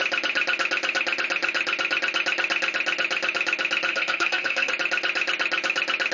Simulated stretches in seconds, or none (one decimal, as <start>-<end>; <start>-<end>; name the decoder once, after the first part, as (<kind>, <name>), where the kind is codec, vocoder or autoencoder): 3.9-4.7 (codec, SNAC)